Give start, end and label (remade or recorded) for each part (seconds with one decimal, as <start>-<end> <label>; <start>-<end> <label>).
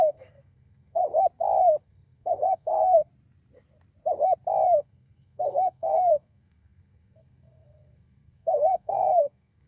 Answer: 0.0-1.0 remade; 1.0-1.8 recorded; 1.8-3.1 remade; 3.1-4.8 recorded; 4.8-9.7 remade